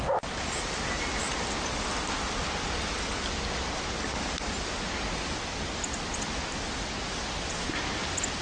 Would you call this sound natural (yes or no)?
yes